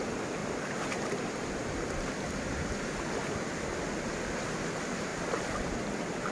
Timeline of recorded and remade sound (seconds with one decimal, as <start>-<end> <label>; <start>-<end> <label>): 0.0-5.1 recorded; 5.1-6.3 remade